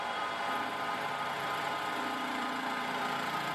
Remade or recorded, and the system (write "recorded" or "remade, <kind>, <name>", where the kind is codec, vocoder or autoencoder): remade, vocoder, BigVGAN v2